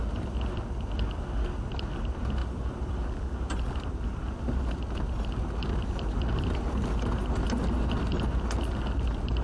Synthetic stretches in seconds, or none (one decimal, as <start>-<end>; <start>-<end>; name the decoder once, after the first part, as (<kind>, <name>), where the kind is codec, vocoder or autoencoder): 2.4-4.4 (vocoder, BigVGAN v2)